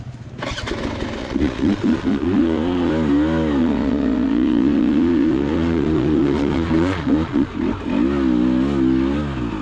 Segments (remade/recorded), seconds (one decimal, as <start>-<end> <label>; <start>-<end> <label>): 0.0-1.2 recorded; 1.2-2.9 remade; 2.9-3.6 recorded; 3.6-7.5 remade; 7.5-9.6 recorded